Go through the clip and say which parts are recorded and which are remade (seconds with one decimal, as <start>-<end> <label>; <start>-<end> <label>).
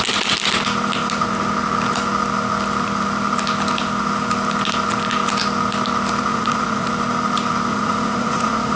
0.0-6.3 recorded; 6.3-6.9 remade; 6.9-7.7 recorded; 7.7-8.8 remade